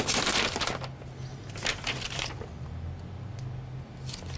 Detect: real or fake real